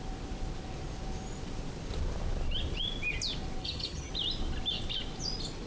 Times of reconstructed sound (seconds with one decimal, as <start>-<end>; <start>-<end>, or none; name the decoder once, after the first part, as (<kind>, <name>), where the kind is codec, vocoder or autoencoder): 3.6-4.1 (vocoder, HiFi-GAN)